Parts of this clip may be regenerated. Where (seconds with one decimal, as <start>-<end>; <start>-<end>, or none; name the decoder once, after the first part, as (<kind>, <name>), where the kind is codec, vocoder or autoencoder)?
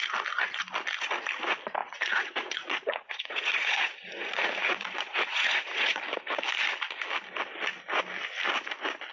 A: 1.8-6.0 (vocoder, Vocos)